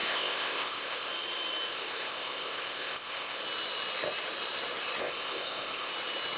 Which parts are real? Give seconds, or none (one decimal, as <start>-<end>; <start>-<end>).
1.1-1.7; 3.4-5.0; 5.9-6.4

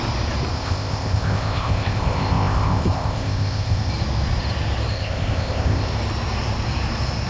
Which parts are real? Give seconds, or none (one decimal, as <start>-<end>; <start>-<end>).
0.0-0.5; 3.9-4.9; 5.9-7.3

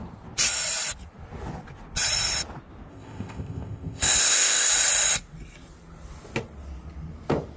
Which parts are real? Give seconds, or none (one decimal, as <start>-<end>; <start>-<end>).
0.0-2.9; 4.7-7.6

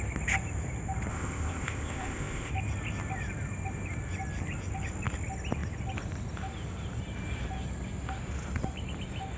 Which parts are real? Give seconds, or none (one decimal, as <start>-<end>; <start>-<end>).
0.0-1.1; 2.5-9.4

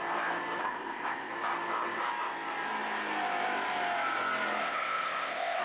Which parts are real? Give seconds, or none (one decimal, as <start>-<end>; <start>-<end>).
0.0-0.6; 1.3-4.6

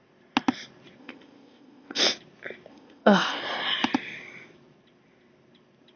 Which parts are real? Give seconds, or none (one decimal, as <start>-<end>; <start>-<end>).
0.0-1.0; 2.0-2.7; 3.4-6.0

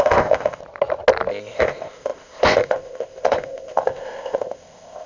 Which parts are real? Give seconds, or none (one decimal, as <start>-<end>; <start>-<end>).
0.6-1.3

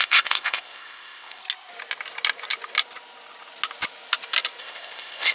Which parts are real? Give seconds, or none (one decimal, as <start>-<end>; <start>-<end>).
1.4-4.6